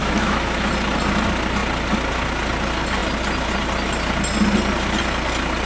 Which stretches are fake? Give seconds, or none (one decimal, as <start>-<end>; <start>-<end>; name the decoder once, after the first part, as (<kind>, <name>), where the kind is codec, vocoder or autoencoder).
0.0-0.7 (autoencoder, DAC-VAE)